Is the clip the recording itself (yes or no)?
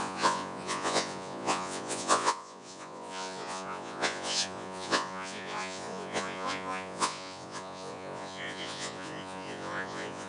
no